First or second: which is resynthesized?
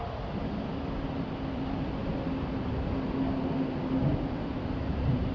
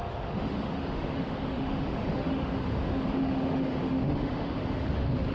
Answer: second